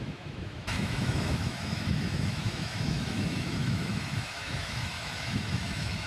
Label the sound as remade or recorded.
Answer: remade